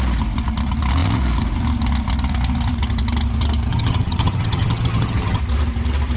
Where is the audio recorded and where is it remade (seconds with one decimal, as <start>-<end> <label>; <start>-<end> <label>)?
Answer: 0.0-3.7 recorded; 3.7-5.4 remade; 5.4-6.2 recorded

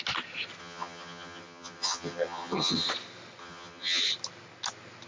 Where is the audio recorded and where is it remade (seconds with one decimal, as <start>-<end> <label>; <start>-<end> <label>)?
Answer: 0.0-0.6 recorded; 0.6-2.9 remade; 2.9-3.4 recorded; 3.4-4.0 remade; 4.0-5.1 recorded

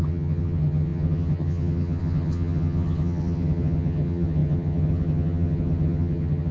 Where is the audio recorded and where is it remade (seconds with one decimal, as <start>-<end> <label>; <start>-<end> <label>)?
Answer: 0.0-6.5 remade

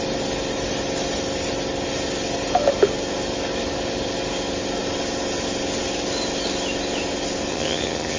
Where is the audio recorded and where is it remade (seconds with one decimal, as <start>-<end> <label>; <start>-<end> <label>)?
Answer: 0.0-7.5 recorded; 7.5-8.2 remade